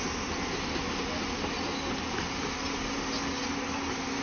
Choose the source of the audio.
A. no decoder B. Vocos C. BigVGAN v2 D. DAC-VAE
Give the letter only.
A